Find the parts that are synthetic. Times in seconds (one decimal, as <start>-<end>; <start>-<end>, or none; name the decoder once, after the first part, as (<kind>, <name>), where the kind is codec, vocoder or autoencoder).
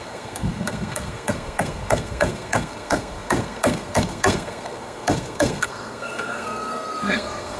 0.0-7.6 (codec, SNAC)